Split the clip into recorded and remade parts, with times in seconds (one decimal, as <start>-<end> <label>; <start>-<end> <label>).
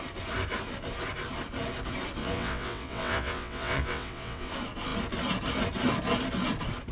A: 0.0-2.2 recorded; 2.2-4.5 remade; 4.5-6.9 recorded